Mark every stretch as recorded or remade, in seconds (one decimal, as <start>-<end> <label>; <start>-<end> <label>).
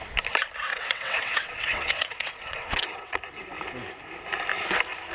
0.0-0.7 recorded; 0.7-3.2 remade; 3.2-5.1 recorded